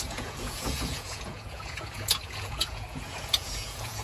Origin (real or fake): fake